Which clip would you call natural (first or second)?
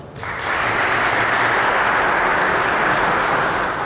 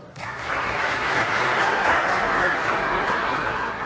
first